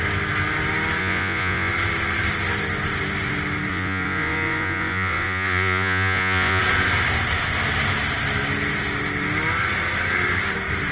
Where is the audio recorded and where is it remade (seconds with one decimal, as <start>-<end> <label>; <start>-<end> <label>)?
0.0-1.0 recorded; 1.0-1.7 remade; 1.7-3.7 recorded; 3.7-6.6 remade; 6.6-10.9 recorded